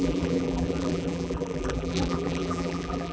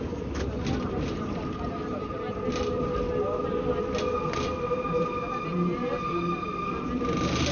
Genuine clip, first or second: second